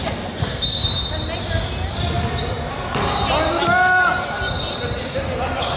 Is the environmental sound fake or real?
real